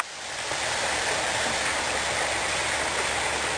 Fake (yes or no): no